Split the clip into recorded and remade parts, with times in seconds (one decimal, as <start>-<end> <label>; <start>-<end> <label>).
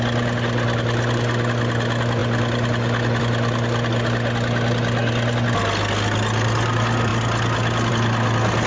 0.0-8.7 recorded